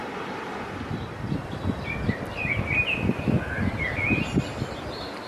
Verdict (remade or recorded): recorded